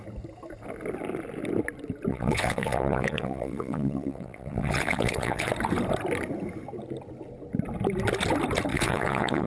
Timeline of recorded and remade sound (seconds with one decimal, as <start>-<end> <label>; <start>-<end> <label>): 0.0-2.1 recorded; 2.1-5.5 remade; 5.5-8.7 recorded; 8.7-9.5 remade